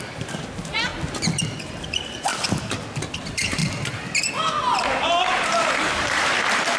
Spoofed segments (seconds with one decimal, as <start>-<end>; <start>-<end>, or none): 0.0-0.9; 1.8-2.3; 3.2-3.6; 4.7-6.8